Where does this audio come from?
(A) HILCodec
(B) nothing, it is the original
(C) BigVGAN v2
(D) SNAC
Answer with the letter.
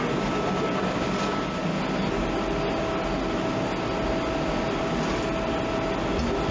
B